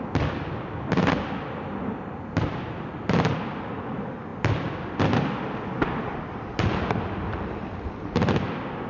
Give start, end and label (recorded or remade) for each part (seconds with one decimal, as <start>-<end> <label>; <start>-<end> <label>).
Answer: 0.0-8.9 recorded